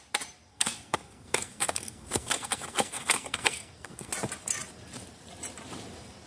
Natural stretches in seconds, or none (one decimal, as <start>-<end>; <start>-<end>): 0.0-0.5; 4.1-6.3